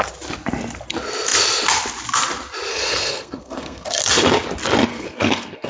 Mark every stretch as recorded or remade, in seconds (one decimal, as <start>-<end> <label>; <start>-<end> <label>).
0.0-2.7 recorded; 2.7-4.0 remade; 4.0-4.9 recorded; 4.9-5.7 remade